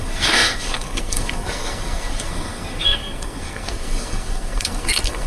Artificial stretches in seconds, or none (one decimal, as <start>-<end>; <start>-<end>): 0.0-5.3